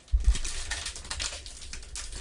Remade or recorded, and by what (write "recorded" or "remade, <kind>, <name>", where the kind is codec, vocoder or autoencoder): recorded